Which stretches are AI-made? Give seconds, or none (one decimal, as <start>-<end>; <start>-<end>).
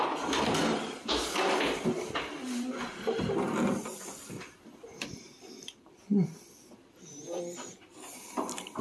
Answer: 0.0-8.8